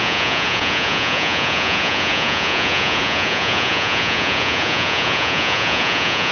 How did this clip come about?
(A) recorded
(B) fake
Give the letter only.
B